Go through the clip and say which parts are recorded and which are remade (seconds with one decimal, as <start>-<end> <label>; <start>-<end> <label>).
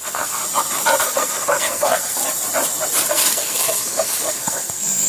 0.0-0.4 remade; 0.4-1.0 recorded; 1.0-2.2 remade; 2.2-3.1 recorded; 3.1-5.1 remade